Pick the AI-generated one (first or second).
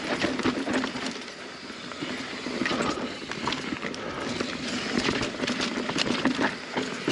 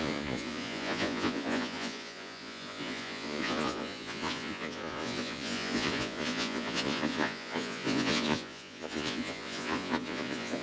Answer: second